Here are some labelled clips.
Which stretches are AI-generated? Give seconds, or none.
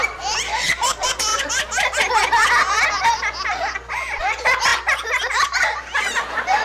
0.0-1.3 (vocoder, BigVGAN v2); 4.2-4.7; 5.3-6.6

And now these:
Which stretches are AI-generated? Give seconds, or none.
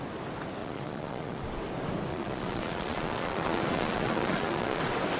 0.6-1.4 (vocoder, Vocos); 2.1-4.8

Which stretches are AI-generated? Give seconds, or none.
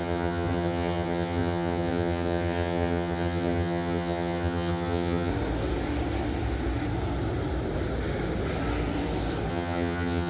0.0-5.3 (vocoder, HiFi-GAN); 9.5-10.3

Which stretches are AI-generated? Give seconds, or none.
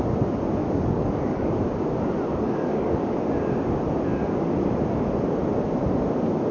0.6-1.6 (codec, DAC); 2.3-3.1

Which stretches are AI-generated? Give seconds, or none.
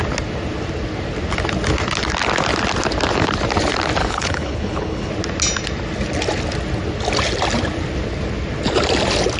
4.0-5.1 (codec, HILCodec)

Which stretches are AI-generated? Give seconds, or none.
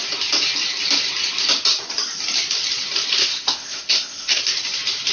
3.2-4.4 (codec, ZipCodec)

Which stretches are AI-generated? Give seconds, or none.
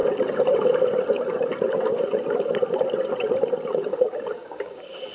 3.9-5.1 (codec, DAC)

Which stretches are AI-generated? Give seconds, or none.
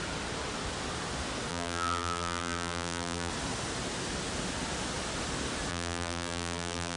1.5-3.3 (vocoder, BigVGAN v2); 5.7-7.0